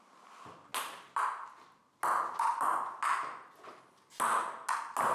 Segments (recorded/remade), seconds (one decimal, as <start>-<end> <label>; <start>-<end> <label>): 0.0-5.1 recorded